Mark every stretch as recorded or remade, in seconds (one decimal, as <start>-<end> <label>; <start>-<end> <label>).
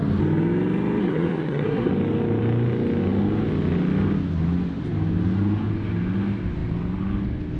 0.0-1.0 recorded; 1.0-1.9 remade; 1.9-7.6 recorded